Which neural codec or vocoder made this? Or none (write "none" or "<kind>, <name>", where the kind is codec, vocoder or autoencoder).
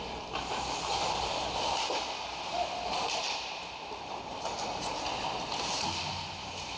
none